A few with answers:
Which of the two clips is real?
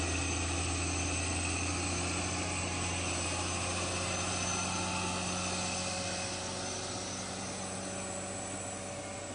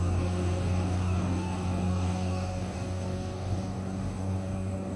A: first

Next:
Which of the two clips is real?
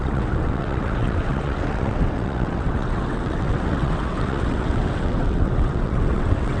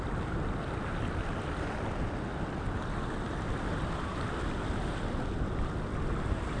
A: second